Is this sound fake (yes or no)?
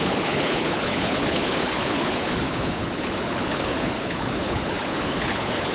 yes